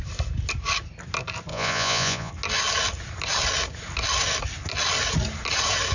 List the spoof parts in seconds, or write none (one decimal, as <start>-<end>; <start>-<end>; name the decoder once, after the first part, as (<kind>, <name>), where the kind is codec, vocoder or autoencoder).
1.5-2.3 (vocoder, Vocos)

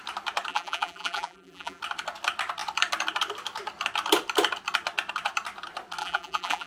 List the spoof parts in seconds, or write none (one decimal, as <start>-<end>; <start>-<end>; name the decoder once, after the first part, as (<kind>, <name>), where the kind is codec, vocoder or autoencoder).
0.5-1.8 (vocoder, BigVGAN v2); 6.0-6.7

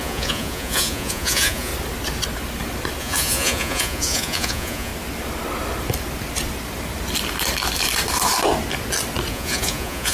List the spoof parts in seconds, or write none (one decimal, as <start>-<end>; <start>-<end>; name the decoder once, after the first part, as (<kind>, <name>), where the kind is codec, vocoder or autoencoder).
0.0-1.7 (vocoder, Vocos); 3.0-4.9; 9.3-10.1

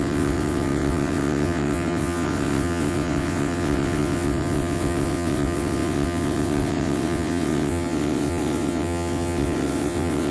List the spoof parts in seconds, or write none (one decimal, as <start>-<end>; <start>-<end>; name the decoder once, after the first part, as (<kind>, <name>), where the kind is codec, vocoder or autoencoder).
0.0-10.3 (vocoder, WaveNeXt)